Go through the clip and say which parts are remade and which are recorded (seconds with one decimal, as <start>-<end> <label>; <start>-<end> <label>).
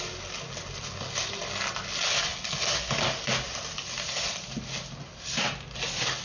0.0-6.2 recorded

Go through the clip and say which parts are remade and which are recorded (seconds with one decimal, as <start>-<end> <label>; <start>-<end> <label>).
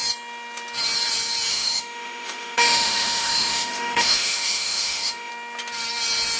0.0-1.5 recorded; 1.5-5.3 remade; 5.3-6.4 recorded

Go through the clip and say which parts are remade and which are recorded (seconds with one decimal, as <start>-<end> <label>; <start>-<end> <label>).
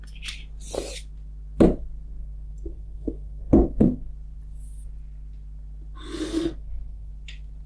0.0-2.2 recorded; 2.2-4.1 remade; 4.1-6.3 recorded; 6.3-7.1 remade; 7.1-7.7 recorded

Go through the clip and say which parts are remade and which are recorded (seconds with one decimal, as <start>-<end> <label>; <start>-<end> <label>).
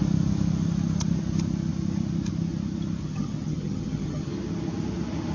0.0-3.0 recorded; 3.0-4.3 remade; 4.3-5.3 recorded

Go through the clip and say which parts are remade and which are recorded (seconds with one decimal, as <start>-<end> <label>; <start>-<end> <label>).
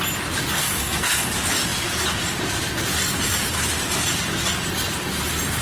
0.0-0.6 recorded; 0.6-1.1 remade; 1.1-5.6 recorded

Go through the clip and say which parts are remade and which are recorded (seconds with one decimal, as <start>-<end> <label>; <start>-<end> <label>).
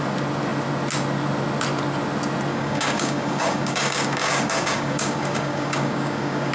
0.0-2.5 recorded; 2.5-6.5 remade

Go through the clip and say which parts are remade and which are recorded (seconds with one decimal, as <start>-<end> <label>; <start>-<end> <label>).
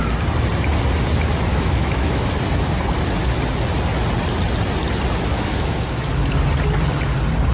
0.0-1.5 recorded; 1.5-2.2 remade; 2.2-5.3 recorded; 5.3-6.1 remade; 6.1-7.5 recorded